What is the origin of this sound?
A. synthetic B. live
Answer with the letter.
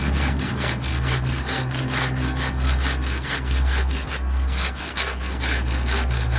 A